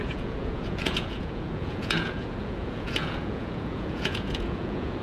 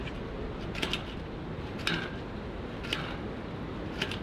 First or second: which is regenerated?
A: first